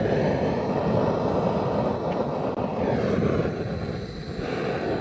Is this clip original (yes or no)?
yes